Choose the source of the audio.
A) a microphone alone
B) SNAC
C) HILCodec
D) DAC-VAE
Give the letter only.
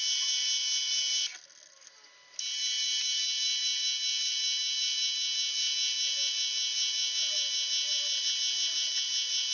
A